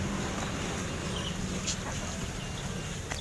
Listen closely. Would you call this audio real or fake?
real